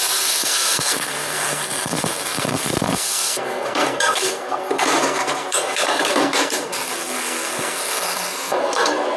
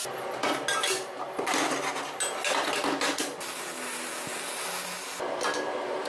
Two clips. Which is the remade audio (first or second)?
first